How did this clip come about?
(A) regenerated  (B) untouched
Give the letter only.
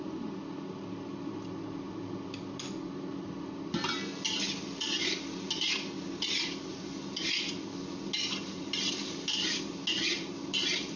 B